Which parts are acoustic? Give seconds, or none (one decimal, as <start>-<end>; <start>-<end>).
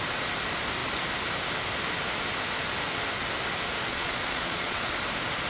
0.0-3.9; 4.9-5.5